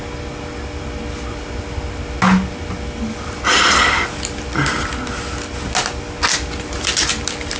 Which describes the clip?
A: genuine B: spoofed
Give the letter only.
A